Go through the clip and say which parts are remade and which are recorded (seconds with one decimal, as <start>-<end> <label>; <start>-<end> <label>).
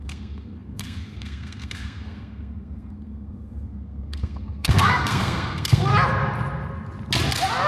0.0-5.9 remade; 5.9-7.7 recorded